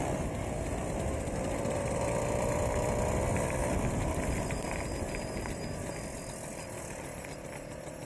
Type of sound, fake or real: real